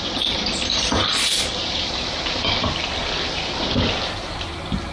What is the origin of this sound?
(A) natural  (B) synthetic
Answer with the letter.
A